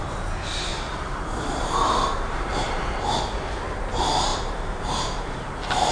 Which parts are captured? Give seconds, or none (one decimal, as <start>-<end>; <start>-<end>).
0.0-0.7; 2.5-4.3; 5.2-5.9